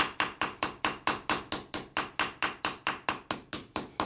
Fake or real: real